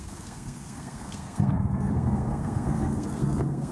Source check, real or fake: fake